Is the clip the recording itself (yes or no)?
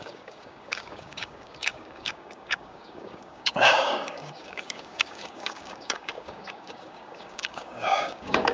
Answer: no